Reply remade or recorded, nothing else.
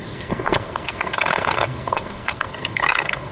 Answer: remade